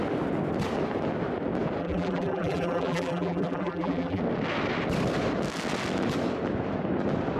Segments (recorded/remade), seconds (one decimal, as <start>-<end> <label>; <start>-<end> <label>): 0.0-1.8 recorded; 1.8-4.2 remade; 4.2-7.4 recorded